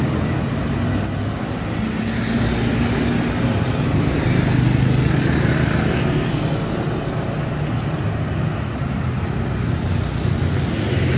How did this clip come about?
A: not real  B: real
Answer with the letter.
B